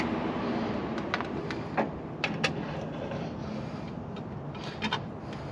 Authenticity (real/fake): real